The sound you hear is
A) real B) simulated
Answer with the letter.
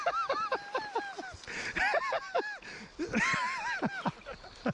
A